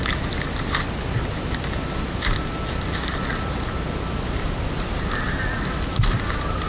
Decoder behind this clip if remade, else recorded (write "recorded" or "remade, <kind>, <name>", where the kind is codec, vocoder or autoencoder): recorded